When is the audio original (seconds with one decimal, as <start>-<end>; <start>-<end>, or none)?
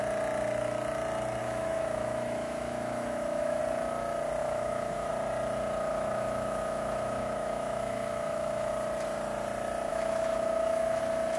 0.0-1.4; 3.6-4.4; 5.1-5.9; 8.7-9.9; 11.0-11.4